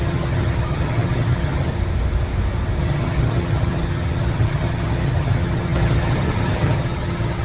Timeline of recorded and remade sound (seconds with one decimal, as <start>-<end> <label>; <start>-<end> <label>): 0.0-1.7 remade; 1.7-2.8 recorded; 2.8-7.4 remade